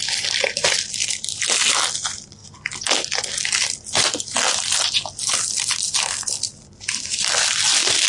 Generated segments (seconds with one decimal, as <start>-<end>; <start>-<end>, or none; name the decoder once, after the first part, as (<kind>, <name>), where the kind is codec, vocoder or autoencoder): 0.0-2.4 (vocoder, BigVGAN v2); 5.2-8.1